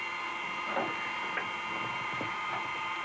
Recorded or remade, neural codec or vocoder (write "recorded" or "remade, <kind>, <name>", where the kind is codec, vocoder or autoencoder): recorded